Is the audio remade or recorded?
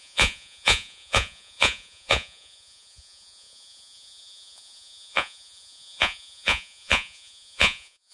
remade